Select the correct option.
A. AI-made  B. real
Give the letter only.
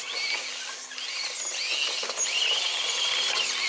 B